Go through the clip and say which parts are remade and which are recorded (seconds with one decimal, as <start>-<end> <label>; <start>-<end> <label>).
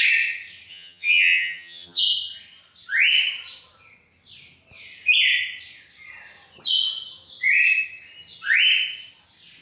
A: 0.0-0.7 recorded; 0.7-2.0 remade; 2.0-9.6 recorded